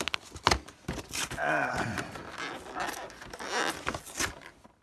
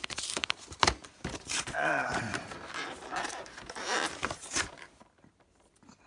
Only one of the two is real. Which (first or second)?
first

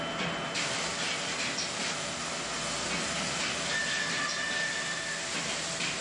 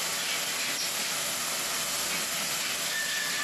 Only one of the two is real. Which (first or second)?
first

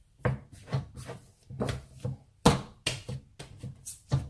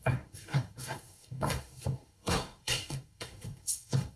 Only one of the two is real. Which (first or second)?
first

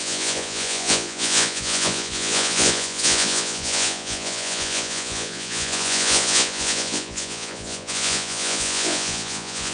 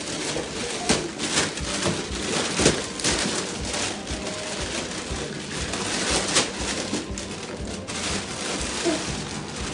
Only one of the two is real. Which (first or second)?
second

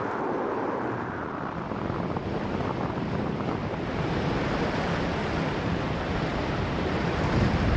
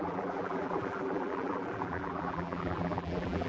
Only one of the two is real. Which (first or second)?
first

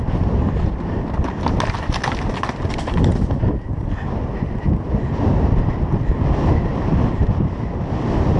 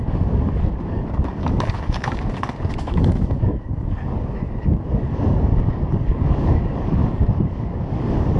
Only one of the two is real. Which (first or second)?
first